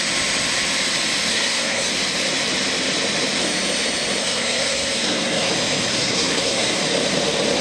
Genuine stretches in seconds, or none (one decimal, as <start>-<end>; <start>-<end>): 0.0-1.3; 1.9-4.2; 5.5-5.9; 6.8-7.6